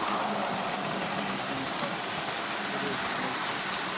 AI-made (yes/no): no